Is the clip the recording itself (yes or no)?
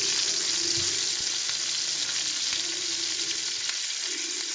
yes